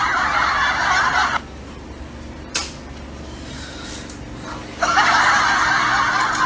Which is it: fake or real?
real